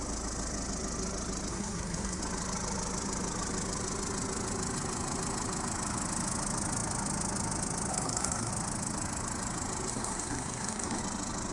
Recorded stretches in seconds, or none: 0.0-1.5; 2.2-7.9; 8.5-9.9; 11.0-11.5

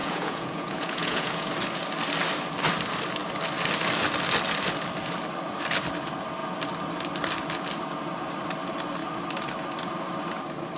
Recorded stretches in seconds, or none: 1.5-10.8

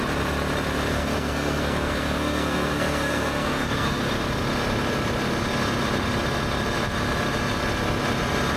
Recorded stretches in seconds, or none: 0.0-0.9; 4.0-8.6

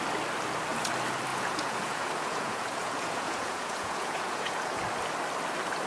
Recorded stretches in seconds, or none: 0.0-1.3; 4.8-5.9